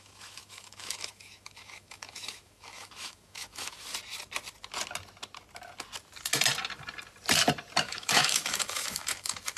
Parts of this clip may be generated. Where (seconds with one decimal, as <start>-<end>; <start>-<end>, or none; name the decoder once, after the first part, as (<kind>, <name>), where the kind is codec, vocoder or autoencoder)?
0.0-3.9 (autoencoder, DAC-VAE); 7.8-9.6